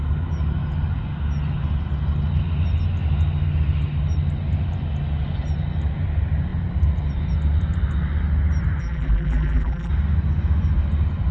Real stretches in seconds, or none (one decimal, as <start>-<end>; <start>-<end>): 0.0-8.8; 9.9-11.3